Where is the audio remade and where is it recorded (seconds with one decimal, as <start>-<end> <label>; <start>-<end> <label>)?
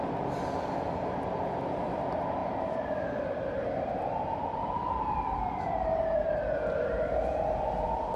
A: 0.0-8.2 recorded